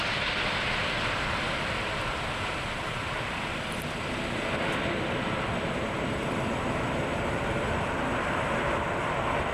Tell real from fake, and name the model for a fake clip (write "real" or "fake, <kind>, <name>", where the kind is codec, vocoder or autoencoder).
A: fake, vocoder, BigVGAN v2